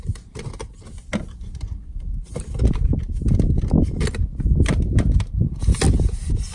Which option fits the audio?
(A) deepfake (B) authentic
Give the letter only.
B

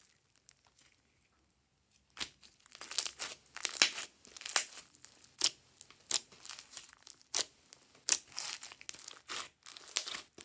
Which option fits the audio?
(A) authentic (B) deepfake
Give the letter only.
A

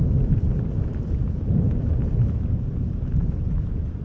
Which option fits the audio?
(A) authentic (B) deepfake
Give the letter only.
B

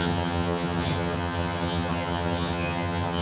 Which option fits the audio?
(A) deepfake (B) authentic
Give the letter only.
A